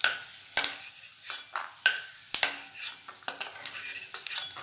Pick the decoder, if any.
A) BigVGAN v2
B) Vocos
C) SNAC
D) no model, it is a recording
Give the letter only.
D